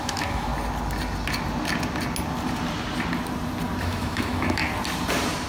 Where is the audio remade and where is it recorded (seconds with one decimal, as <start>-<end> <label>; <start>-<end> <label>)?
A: 0.0-0.5 remade; 0.5-3.8 recorded; 3.8-4.6 remade; 4.6-5.5 recorded